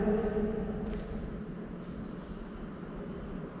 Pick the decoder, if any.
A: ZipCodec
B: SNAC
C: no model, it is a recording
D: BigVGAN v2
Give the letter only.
C